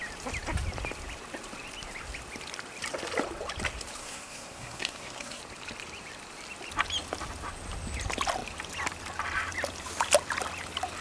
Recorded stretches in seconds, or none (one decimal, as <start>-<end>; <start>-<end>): 0.0-4.0; 5.4-11.0